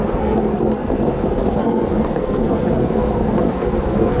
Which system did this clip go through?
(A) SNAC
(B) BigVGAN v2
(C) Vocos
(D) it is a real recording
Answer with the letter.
A